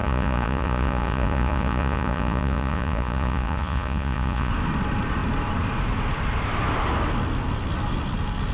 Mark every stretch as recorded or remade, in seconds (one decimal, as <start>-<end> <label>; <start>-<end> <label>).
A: 0.0-4.5 remade; 4.5-8.5 recorded